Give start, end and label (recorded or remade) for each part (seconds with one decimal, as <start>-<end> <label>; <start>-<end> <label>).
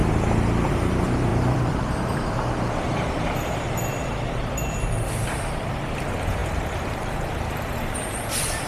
0.0-0.7 recorded; 0.7-8.7 remade